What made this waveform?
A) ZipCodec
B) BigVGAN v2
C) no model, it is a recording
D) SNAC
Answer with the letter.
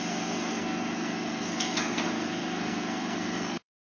D